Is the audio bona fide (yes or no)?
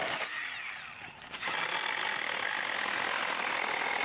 yes